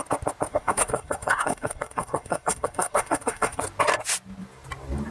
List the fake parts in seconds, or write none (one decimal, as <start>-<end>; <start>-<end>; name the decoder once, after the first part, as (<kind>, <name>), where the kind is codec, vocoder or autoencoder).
0.5-3.6 (codec, SNAC)